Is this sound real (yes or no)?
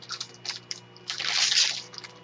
yes